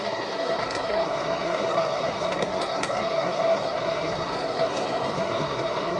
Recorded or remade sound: remade